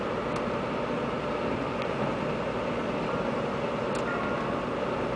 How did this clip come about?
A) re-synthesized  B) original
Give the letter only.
B